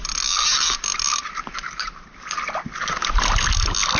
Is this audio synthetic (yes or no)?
no